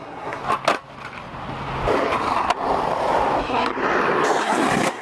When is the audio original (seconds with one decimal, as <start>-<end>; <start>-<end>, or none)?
0.4-3.4; 3.8-4.4